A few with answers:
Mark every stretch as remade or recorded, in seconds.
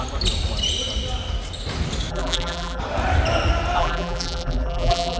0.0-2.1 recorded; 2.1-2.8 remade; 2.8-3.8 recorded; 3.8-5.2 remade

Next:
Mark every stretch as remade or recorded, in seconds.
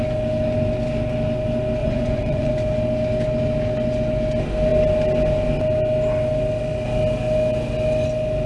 0.0-1.8 recorded; 1.8-2.5 remade; 2.5-8.5 recorded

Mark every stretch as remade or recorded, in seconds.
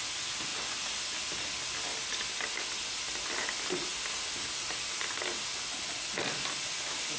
0.0-7.2 recorded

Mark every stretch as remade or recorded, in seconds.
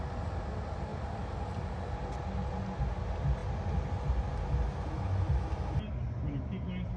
0.0-7.0 recorded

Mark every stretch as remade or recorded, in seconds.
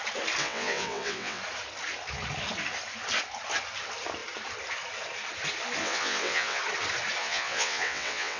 0.0-0.4 recorded; 0.4-1.4 remade; 1.4-5.8 recorded; 5.8-6.6 remade; 6.6-7.2 recorded; 7.2-8.4 remade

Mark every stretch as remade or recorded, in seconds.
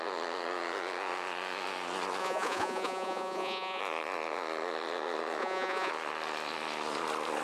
0.0-2.2 recorded; 2.2-3.8 remade; 3.8-5.4 recorded; 5.4-5.9 remade; 5.9-7.4 recorded